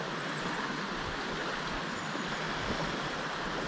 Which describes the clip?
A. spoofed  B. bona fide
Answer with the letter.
B